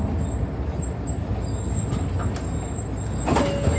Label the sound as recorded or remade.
recorded